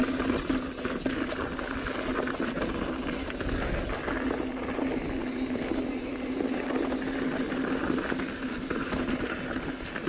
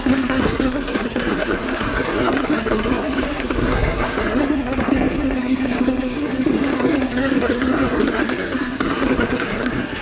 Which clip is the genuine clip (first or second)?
first